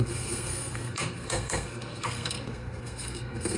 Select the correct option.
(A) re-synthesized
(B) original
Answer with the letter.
A